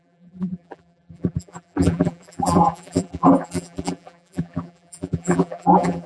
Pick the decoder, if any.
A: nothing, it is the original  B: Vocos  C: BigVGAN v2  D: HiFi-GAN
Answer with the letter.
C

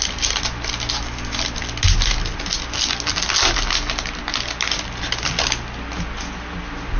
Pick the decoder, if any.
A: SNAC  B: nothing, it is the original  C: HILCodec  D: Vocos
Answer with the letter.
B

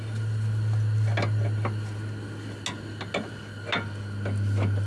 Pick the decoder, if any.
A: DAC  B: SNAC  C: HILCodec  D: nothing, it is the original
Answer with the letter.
D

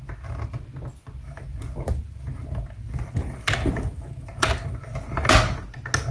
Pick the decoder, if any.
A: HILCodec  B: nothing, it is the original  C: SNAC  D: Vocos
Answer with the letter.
B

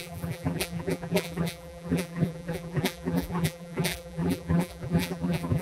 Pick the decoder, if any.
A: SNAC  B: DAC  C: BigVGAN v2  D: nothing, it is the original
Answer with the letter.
C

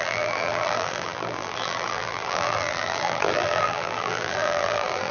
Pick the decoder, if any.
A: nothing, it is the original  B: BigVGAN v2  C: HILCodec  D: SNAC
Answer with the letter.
B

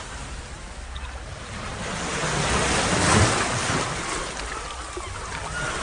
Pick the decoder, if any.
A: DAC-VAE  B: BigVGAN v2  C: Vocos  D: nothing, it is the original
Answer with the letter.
B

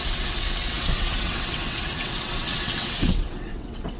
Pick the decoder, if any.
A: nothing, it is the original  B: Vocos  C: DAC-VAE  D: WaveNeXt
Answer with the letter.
D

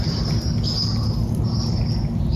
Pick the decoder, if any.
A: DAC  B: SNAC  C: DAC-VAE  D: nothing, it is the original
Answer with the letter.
D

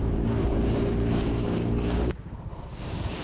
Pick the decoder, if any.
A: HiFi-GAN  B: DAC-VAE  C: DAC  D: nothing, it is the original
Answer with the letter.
C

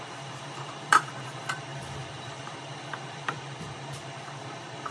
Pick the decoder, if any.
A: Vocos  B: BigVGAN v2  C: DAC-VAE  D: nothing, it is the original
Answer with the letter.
B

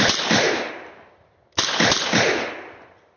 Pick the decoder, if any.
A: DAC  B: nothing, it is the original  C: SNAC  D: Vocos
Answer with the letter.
B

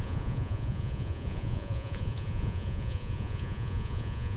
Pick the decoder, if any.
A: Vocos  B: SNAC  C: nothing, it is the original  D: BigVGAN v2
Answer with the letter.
A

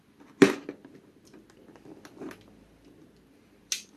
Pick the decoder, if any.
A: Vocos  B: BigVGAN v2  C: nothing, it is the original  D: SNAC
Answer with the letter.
C